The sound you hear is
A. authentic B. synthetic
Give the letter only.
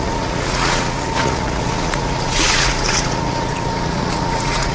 B